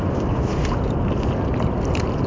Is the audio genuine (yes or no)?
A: yes